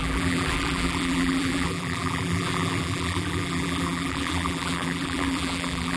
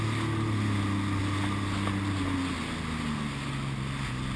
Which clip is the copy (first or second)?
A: first